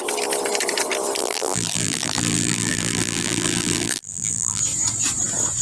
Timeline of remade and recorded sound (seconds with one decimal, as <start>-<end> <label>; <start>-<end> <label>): 0.0-1.2 recorded; 1.2-4.6 remade; 4.6-5.6 recorded